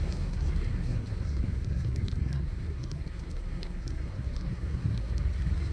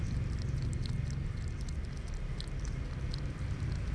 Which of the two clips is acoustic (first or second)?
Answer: second